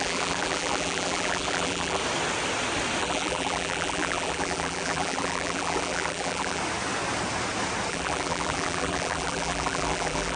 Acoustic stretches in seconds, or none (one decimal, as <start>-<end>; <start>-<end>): 2.0-3.0; 6.6-7.9